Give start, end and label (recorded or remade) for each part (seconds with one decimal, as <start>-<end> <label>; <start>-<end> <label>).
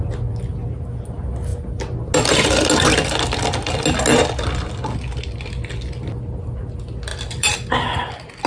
0.0-7.1 recorded; 7.1-7.7 remade; 7.7-8.5 recorded